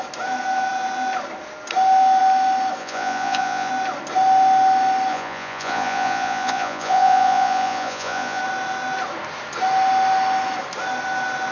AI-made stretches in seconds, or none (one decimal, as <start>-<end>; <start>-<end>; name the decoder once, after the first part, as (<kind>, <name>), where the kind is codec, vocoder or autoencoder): 2.8-3.7 (vocoder, Vocos); 5.1-8.4